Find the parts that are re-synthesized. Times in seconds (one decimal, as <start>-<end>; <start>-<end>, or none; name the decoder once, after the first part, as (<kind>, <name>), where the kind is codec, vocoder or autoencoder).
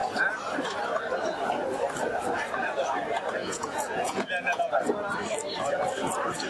3.4-4.7 (vocoder, Vocos)